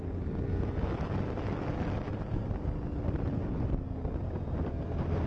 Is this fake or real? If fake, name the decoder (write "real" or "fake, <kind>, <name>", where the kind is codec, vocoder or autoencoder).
real